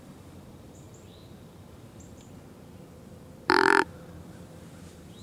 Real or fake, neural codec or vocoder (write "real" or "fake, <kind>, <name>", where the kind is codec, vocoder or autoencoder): fake, vocoder, BigVGAN v2